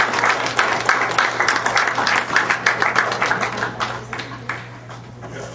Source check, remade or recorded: recorded